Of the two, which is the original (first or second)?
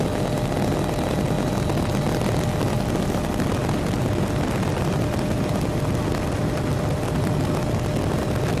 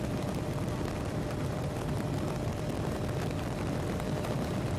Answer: first